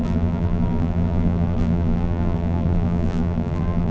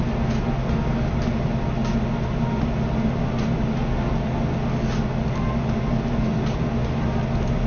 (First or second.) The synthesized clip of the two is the first